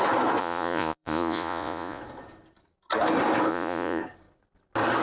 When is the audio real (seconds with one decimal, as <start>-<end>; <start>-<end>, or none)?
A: 0.0-0.4; 2.0-3.5; 4.0-5.0